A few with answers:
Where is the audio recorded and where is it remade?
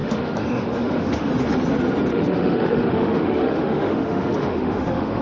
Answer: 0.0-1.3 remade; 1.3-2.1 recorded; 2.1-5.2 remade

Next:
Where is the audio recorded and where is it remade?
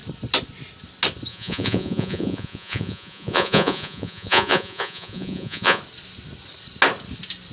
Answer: 0.0-1.3 recorded; 1.3-5.8 remade; 5.8-7.5 recorded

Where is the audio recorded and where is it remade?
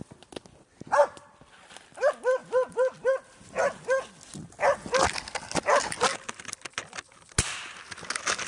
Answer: 0.0-8.5 recorded